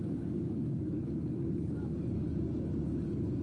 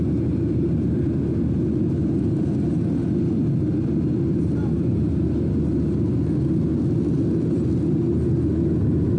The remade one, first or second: first